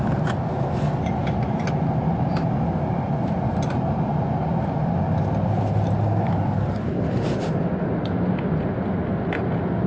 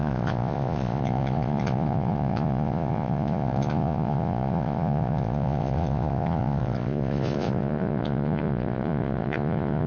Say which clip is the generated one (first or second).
second